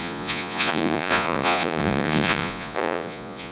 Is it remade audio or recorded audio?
remade